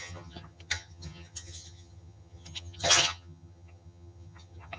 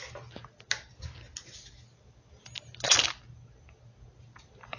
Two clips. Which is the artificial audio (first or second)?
first